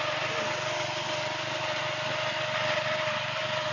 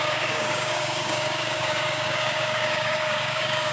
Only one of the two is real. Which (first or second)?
first